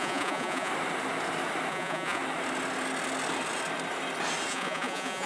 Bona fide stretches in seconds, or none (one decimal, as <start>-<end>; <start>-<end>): 0.7-1.7; 2.2-4.5